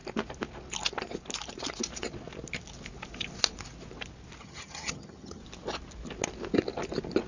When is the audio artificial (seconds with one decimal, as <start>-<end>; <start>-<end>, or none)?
4.4-5.4